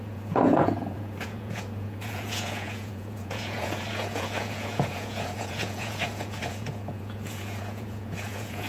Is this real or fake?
fake